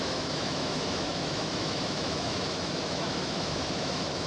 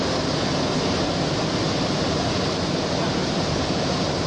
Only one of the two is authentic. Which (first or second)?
second